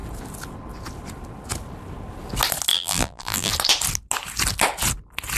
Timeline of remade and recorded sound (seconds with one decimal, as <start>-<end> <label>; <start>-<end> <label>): 0.0-2.7 recorded; 2.7-3.5 remade; 3.5-5.4 recorded